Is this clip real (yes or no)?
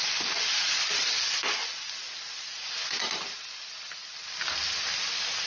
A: yes